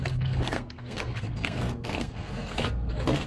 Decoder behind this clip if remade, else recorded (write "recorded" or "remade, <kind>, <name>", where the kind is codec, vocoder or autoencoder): remade, codec, SNAC